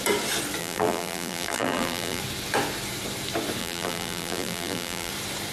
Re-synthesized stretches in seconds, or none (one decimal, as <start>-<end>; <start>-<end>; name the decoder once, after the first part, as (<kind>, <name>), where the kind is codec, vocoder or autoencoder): 0.6-2.2 (vocoder, BigVGAN v2); 3.6-5.1

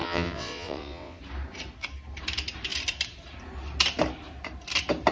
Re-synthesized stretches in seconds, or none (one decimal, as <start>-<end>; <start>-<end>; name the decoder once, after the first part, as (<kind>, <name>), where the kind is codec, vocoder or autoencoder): 0.0-1.2 (vocoder, WaveNeXt)

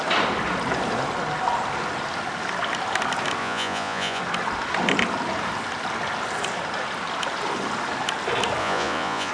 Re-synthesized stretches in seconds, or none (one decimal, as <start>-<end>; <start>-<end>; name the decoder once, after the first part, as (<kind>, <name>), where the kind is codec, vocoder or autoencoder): 3.4-4.2 (vocoder, Vocos); 8.6-9.3

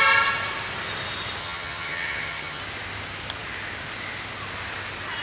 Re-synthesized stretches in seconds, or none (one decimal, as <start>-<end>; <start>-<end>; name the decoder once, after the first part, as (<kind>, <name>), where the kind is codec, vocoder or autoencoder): 1.4-2.6 (vocoder, HiFi-GAN)